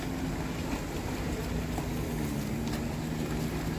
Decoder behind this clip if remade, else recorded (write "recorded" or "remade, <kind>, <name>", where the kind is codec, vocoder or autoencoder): recorded